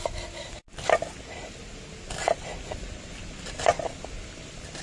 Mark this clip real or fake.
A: real